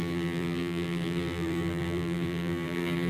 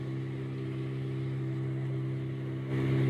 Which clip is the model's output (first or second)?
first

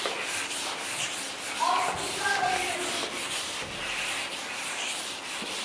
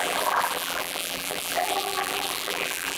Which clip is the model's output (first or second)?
second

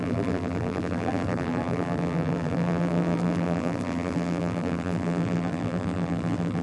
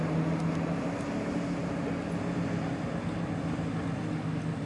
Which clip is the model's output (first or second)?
first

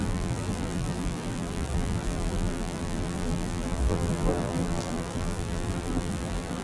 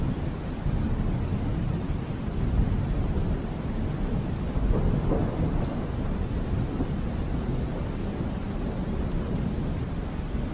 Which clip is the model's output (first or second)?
first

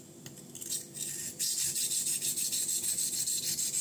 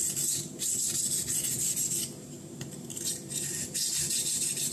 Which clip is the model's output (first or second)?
second